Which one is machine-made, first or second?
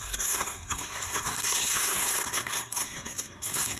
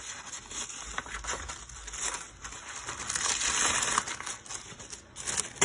first